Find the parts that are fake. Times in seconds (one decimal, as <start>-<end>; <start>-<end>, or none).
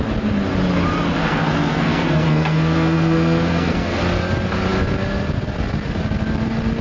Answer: 1.2-4.0